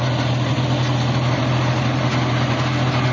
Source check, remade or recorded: recorded